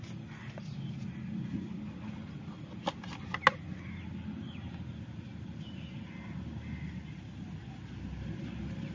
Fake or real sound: real